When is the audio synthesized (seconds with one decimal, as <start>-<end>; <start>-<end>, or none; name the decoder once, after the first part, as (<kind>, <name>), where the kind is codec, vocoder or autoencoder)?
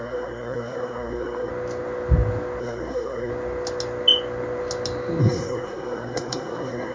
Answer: 0.0-1.5 (codec, SNAC); 2.6-3.3; 5.2-6.9